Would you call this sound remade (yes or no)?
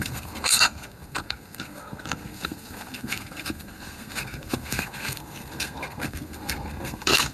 yes